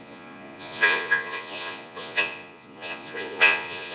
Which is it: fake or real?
fake